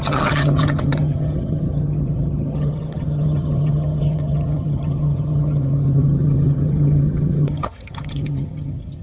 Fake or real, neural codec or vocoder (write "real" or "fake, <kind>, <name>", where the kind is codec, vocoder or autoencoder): fake, vocoder, HiFi-GAN